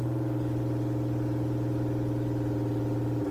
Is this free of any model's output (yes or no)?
yes